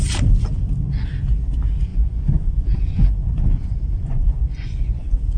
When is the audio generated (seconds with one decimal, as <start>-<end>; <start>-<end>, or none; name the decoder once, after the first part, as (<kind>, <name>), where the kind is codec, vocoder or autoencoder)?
1.9-5.4 (vocoder, Vocos)